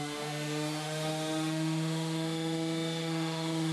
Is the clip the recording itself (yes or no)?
no